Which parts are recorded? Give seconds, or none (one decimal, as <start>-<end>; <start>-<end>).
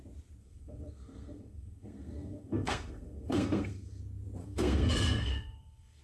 0.0-0.4; 4.0-4.4